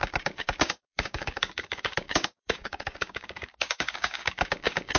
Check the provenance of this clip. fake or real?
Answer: fake